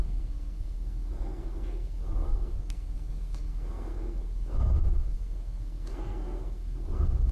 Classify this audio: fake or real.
fake